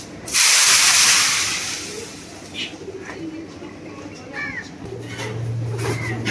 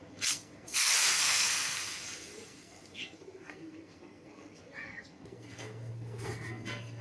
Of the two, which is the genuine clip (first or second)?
first